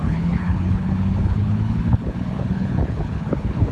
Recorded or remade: remade